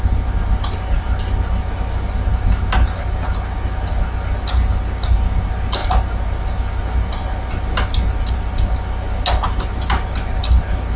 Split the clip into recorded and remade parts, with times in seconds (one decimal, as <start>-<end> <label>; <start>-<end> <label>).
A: 0.0-11.0 recorded